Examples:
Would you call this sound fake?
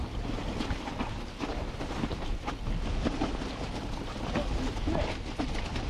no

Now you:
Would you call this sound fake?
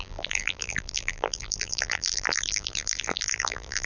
yes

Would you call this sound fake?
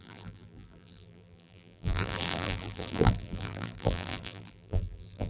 yes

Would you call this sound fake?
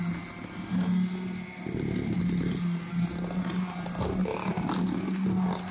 no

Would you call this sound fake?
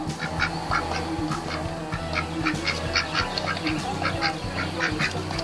no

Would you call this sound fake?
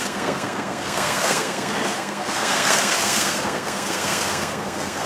yes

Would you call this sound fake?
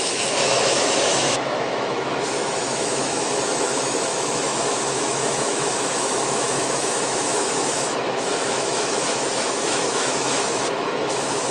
yes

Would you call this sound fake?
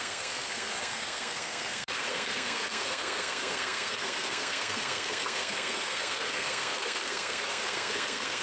yes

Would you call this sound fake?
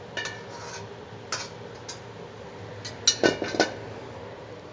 no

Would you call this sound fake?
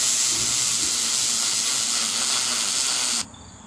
no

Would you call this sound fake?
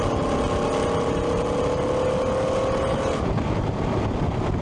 no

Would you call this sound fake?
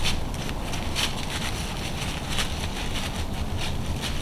no